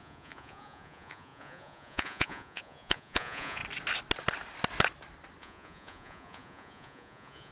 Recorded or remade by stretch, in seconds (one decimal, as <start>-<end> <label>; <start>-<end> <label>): 0.0-3.6 remade; 3.6-5.4 recorded; 5.4-7.5 remade